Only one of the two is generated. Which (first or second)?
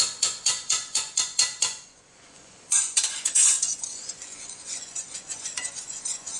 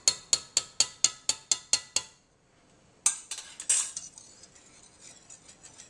first